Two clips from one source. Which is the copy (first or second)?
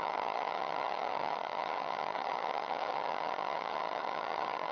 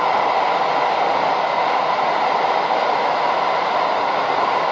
first